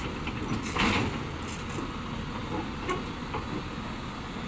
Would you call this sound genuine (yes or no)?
yes